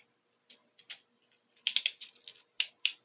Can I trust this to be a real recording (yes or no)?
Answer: yes